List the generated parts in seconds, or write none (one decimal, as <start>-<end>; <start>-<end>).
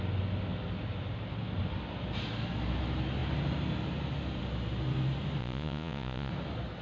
5.4-6.3